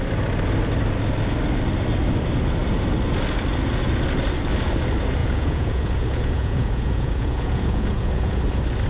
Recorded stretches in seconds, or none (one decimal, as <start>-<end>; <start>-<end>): 0.0-5.2; 8.4-8.9